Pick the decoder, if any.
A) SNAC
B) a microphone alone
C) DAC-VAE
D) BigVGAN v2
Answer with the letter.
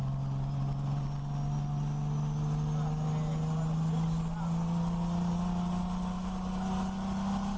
B